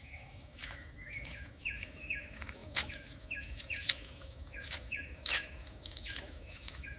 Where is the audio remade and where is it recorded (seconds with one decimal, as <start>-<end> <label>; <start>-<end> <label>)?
0.0-7.0 remade